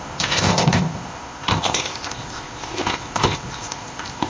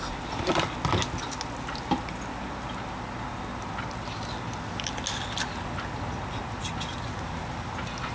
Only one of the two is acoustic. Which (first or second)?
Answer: second